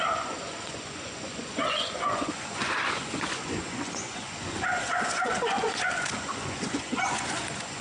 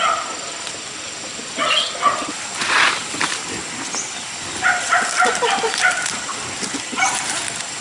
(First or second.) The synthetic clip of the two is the first